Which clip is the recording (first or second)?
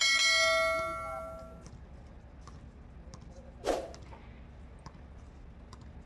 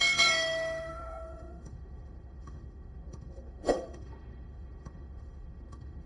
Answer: first